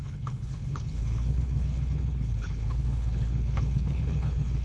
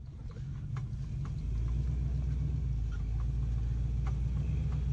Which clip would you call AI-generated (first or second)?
first